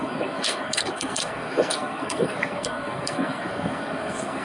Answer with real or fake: fake